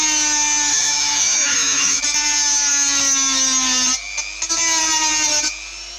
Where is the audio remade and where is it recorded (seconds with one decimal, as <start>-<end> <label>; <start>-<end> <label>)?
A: 0.0-0.7 recorded; 0.7-2.0 remade; 2.0-6.0 recorded